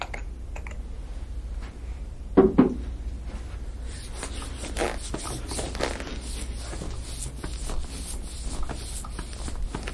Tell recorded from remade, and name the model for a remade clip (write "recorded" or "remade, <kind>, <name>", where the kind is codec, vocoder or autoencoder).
recorded